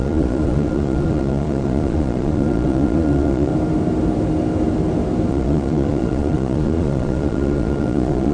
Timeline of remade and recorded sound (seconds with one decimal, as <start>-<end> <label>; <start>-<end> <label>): 0.0-3.5 remade; 3.5-5.3 recorded; 5.3-8.3 remade